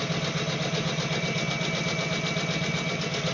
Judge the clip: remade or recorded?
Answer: recorded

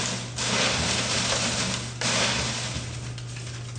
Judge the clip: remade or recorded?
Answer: recorded